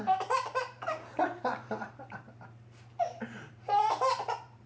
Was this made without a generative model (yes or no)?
no